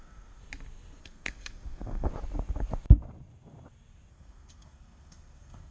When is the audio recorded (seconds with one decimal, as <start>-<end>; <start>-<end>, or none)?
0.4-1.0; 2.1-4.1